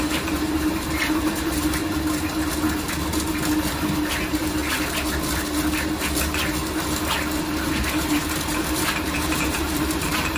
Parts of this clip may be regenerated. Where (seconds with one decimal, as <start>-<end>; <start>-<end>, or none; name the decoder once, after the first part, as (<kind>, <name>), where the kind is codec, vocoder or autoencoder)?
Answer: 0.0-1.8 (vocoder, BigVGAN v2); 4.1-4.6; 7.7-10.4